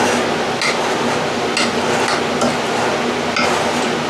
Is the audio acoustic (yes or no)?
yes